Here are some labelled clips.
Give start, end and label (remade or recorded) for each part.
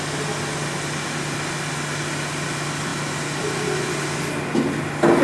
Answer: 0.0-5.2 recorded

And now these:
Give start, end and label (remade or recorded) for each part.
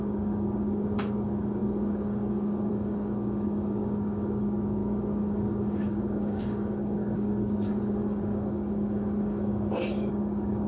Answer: 0.0-10.7 remade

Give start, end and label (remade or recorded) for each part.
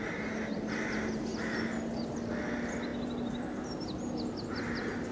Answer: 0.0-5.1 recorded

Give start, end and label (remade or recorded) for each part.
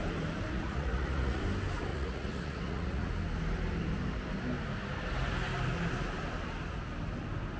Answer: 0.0-0.5 recorded; 0.5-1.4 remade; 1.4-1.9 recorded; 1.9-3.1 remade; 3.1-7.6 recorded